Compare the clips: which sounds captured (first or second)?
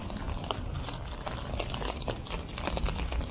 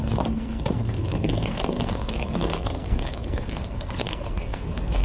first